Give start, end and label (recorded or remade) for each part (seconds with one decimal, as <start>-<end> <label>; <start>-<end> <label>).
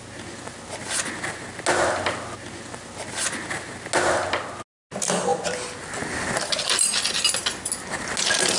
0.0-5.3 recorded; 5.3-7.3 remade; 7.3-8.6 recorded